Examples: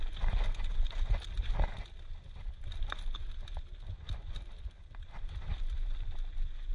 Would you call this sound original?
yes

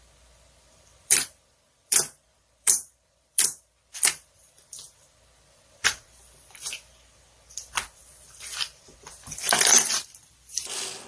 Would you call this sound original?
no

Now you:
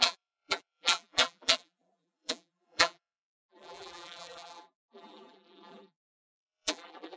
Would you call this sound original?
no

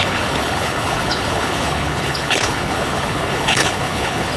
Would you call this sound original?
no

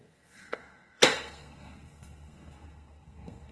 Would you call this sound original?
no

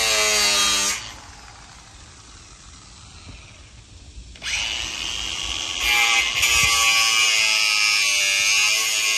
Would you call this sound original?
yes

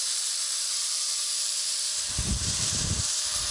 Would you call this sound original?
no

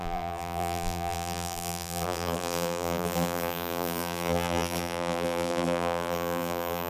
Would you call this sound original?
no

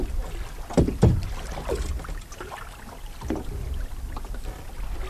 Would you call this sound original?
yes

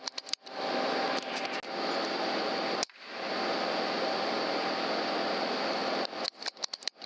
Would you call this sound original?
yes